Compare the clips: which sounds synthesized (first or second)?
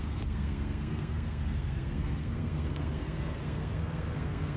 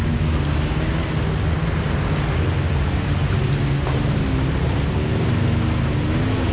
first